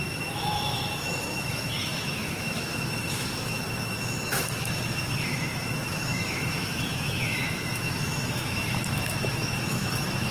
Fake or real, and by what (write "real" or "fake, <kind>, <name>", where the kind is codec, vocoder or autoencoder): fake, autoencoder, DAC-VAE